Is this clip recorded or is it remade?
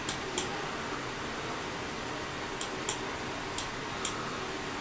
recorded